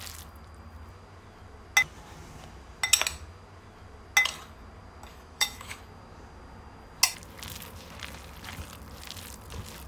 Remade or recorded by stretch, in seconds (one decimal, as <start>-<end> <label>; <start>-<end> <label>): 0.0-5.1 recorded; 5.1-5.8 remade; 5.8-9.9 recorded